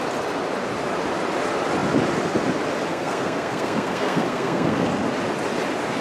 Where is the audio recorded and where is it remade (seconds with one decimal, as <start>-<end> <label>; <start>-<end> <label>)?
0.0-2.9 recorded; 2.9-4.9 remade; 4.9-6.0 recorded